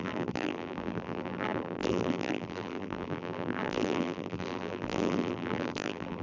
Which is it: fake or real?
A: fake